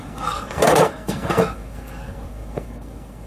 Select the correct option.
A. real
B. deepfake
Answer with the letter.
B